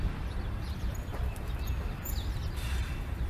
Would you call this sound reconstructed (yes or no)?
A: yes